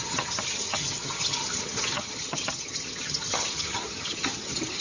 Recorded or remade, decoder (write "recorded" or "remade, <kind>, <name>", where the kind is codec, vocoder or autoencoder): remade, vocoder, HiFi-GAN